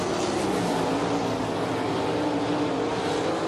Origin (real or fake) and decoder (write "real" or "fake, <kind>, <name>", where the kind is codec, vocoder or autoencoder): real